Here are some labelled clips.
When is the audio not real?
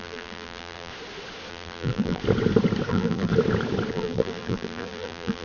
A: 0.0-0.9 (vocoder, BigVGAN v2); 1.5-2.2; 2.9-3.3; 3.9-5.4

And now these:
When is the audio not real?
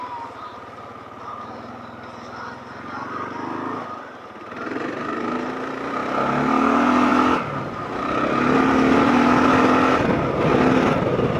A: none